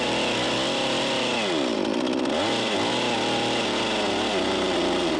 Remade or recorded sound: recorded